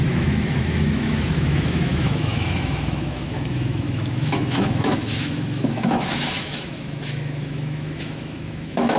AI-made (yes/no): yes